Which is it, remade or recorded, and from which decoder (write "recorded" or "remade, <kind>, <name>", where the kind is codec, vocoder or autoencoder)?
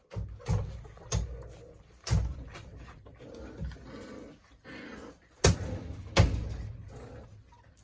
recorded